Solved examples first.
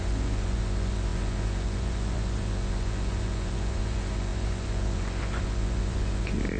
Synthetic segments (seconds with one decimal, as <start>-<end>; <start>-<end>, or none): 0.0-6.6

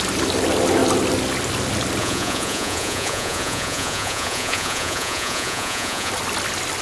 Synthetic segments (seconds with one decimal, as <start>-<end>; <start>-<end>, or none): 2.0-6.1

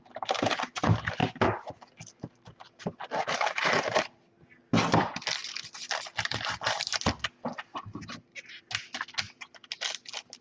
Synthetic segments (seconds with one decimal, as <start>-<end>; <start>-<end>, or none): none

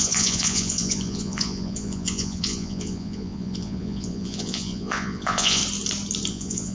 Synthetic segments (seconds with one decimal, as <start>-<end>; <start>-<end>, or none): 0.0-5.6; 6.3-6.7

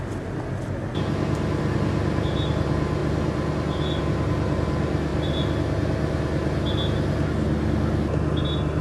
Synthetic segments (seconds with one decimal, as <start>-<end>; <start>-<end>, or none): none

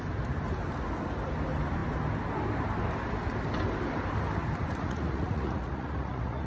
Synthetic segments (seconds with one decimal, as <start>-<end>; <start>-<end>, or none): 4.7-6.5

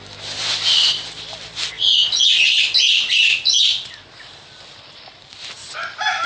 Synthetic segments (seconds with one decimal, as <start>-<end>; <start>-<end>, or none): none